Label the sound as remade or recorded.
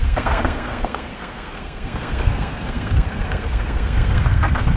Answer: remade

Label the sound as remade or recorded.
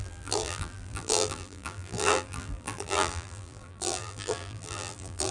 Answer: remade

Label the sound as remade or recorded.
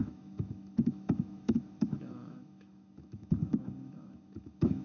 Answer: remade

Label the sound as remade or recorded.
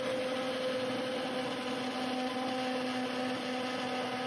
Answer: recorded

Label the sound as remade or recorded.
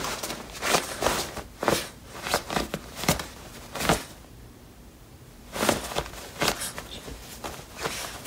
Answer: remade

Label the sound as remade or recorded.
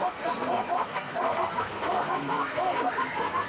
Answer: remade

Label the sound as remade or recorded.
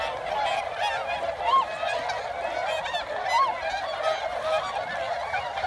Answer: recorded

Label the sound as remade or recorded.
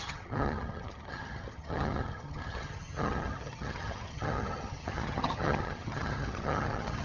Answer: remade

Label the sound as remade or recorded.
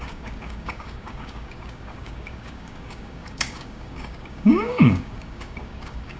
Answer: remade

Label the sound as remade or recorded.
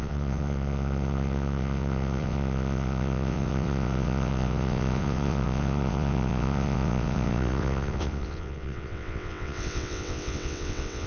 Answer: remade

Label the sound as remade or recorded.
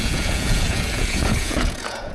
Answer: remade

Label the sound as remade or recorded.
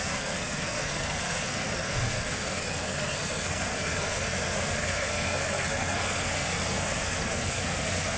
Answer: remade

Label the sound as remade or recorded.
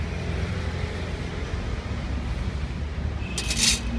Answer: recorded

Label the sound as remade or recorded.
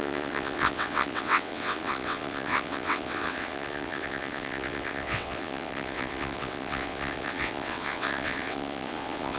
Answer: remade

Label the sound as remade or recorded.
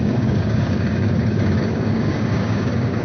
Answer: remade